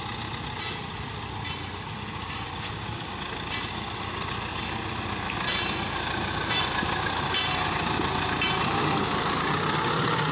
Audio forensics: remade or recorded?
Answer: recorded